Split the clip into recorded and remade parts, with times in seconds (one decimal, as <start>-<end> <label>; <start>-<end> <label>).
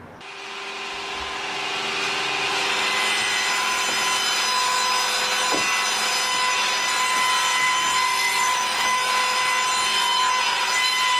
0.0-8.1 recorded; 8.1-9.1 remade; 9.1-11.2 recorded